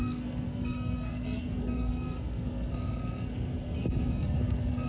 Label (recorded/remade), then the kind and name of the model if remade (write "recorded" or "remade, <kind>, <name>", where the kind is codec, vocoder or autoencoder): remade, codec, SNAC